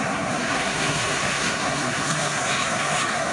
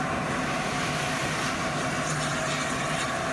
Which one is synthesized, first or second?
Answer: first